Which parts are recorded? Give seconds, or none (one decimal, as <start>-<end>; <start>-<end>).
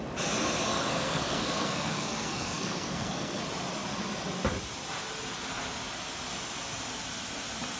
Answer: 0.0-0.7; 3.4-7.8